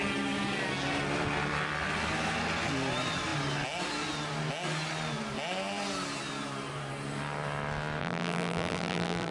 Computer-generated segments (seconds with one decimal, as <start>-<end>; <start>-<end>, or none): 8.0-9.3